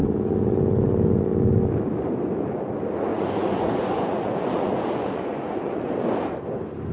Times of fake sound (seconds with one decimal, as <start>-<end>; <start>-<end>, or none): 3.1-5.9